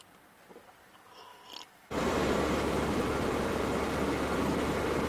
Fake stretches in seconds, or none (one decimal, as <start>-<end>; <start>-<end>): 1.3-3.5